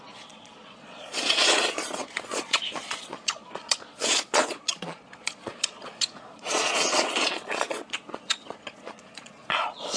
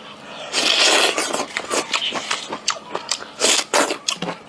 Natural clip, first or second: second